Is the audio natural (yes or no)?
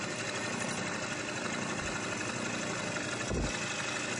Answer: yes